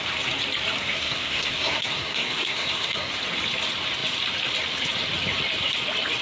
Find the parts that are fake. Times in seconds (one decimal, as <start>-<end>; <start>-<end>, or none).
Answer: 0.8-3.1